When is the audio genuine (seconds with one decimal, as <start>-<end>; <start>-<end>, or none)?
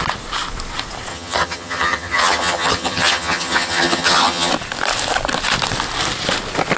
0.0-1.1; 4.5-6.8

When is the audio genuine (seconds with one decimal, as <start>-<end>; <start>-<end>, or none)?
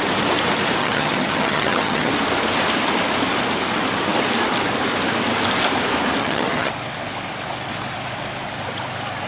0.0-0.8; 2.1-6.2; 6.7-9.3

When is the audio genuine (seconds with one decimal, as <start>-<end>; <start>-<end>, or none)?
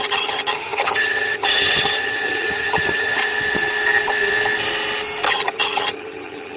3.2-5.3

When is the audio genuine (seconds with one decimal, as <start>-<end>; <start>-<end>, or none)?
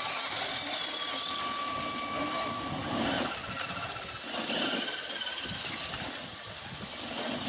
0.0-7.5